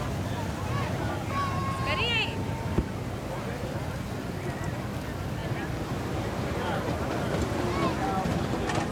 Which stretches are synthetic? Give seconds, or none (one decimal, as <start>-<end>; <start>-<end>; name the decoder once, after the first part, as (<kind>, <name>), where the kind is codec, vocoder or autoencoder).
none